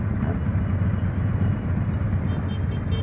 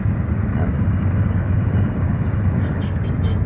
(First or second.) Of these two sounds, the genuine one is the first